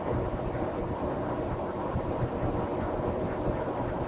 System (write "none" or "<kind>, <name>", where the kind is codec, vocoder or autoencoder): none